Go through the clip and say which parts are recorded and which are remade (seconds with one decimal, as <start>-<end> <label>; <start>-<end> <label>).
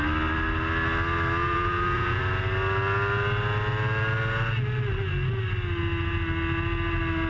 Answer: 0.0-1.4 recorded; 1.4-2.2 remade; 2.2-7.3 recorded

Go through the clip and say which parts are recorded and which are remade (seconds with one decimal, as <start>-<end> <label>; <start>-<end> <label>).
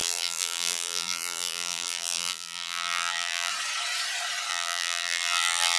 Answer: 0.0-3.5 remade; 3.5-4.5 recorded; 4.5-5.8 remade